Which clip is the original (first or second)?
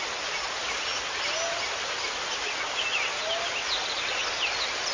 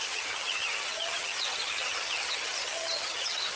first